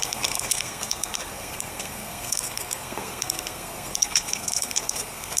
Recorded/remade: remade